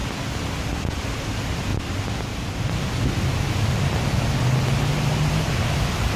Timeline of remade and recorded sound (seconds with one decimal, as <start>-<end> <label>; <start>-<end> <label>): 0.0-0.7 recorded; 0.7-1.7 remade; 1.7-5.2 recorded; 5.2-6.2 remade